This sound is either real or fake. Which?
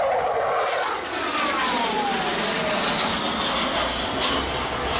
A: real